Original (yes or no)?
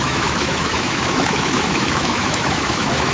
no